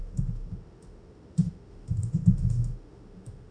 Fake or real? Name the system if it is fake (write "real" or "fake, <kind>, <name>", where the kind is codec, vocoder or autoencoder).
fake, autoencoder, DAC-VAE